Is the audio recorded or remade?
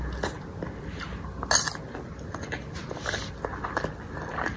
recorded